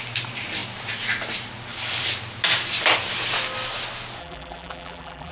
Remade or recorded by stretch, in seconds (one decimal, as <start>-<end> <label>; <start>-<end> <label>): 0.0-4.2 recorded; 4.2-5.3 remade